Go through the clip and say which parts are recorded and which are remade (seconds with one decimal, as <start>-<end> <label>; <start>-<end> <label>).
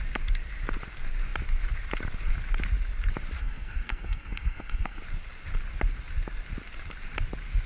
0.0-3.4 recorded; 3.4-5.0 remade; 5.0-7.7 recorded